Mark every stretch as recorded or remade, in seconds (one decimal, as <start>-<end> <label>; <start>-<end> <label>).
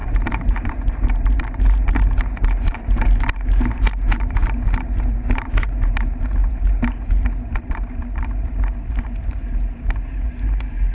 0.0-10.9 remade